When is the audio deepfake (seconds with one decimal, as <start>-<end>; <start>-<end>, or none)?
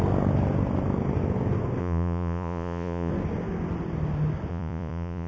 1.8-3.1; 4.5-5.3